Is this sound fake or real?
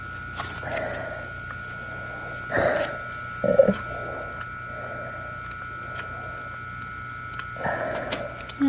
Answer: real